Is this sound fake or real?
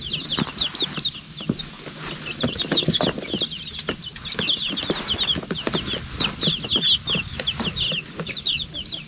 real